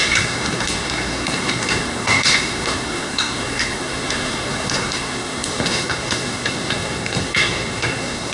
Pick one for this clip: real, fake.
fake